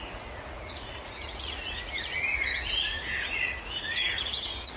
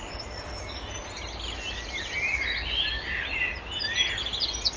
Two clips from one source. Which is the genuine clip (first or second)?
second